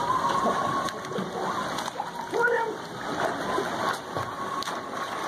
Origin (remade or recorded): recorded